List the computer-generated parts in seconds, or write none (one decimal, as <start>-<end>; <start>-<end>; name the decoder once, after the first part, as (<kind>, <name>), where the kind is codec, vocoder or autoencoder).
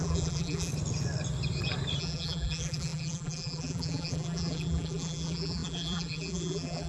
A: 0.0-0.7 (vocoder, BigVGAN v2); 2.0-6.9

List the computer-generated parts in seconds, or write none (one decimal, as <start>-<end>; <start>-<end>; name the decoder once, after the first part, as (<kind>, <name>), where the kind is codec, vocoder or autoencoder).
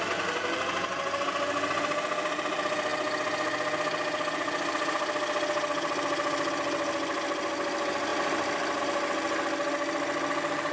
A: 8.1-8.8 (vocoder, BigVGAN v2)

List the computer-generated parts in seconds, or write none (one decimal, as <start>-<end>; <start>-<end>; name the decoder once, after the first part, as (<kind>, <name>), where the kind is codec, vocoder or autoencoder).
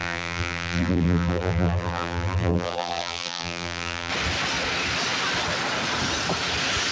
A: 0.0-4.1 (vocoder, BigVGAN v2)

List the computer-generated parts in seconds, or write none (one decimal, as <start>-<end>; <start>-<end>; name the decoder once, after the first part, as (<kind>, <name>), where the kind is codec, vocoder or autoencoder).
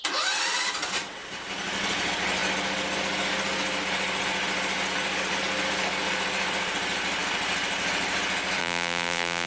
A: 8.6-9.5 (vocoder, BigVGAN v2)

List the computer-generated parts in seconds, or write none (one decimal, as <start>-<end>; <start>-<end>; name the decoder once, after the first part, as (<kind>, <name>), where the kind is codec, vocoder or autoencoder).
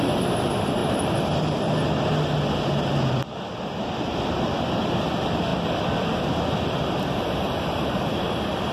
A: none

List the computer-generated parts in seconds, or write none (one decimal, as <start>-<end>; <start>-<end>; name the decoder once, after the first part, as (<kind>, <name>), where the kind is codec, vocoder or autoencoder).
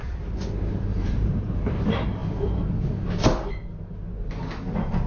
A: 0.9-1.8 (vocoder, BigVGAN v2)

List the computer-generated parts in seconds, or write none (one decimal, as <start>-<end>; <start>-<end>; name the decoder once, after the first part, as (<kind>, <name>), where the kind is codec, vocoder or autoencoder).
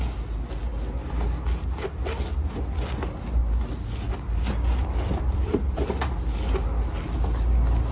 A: 4.8-5.6 (vocoder, BigVGAN v2)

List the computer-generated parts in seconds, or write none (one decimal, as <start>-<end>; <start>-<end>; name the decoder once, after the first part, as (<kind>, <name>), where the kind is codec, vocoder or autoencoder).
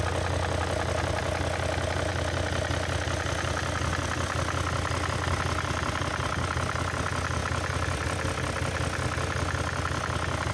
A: none